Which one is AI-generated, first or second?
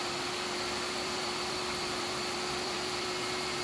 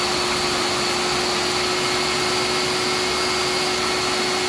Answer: first